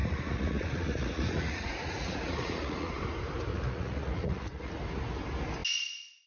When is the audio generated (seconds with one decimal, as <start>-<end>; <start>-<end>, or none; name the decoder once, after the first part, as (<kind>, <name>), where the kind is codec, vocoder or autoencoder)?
0.0-2.9 (vocoder, Vocos); 3.5-4.8